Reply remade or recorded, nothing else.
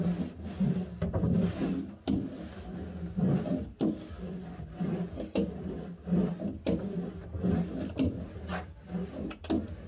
recorded